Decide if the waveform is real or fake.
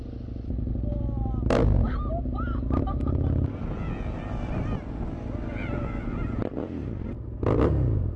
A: real